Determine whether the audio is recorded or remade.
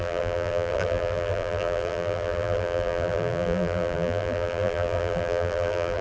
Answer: remade